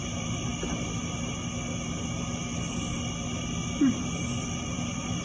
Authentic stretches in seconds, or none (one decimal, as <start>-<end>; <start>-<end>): 0.5-3.6